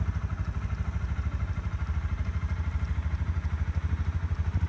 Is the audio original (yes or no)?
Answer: yes